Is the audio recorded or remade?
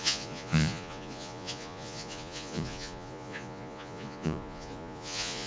remade